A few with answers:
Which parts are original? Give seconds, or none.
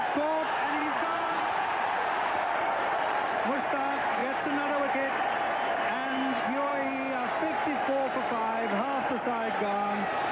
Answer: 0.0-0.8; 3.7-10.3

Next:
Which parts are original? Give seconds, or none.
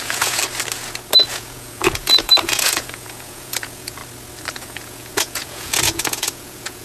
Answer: 0.4-1.3; 4.0-4.5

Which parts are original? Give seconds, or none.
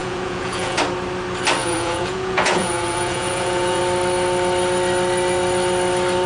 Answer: 0.8-1.6; 3.8-6.3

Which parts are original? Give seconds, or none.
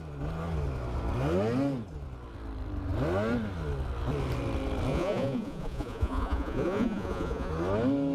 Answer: 0.0-4.9; 7.5-8.1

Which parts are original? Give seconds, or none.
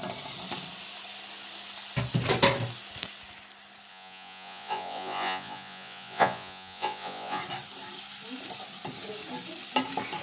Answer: 0.0-3.9; 7.4-10.2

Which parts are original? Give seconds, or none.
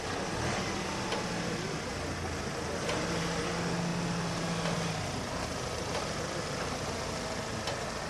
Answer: 0.0-8.1